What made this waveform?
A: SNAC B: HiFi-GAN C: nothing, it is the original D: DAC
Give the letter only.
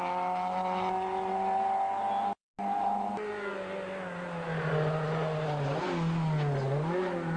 C